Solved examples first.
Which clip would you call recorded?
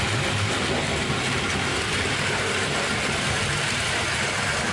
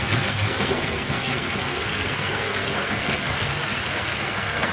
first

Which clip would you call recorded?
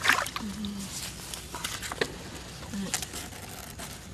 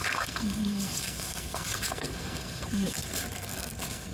first